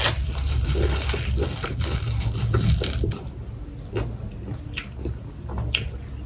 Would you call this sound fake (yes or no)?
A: no